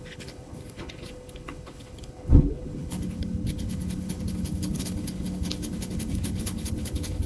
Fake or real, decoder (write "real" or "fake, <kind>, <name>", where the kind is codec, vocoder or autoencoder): fake, codec, HILCodec